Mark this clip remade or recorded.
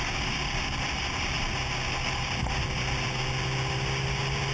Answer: recorded